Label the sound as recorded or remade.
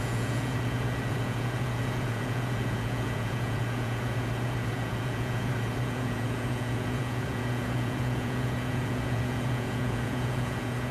remade